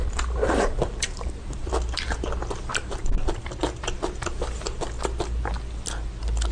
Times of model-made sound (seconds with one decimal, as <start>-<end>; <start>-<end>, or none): 0.0-1.7; 2.7-3.6